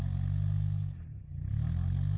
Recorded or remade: recorded